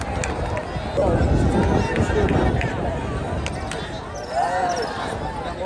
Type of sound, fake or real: real